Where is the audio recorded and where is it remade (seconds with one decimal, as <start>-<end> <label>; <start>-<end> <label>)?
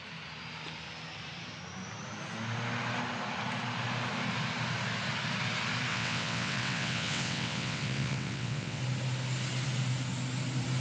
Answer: 0.0-5.9 recorded; 5.9-8.8 remade; 8.8-10.8 recorded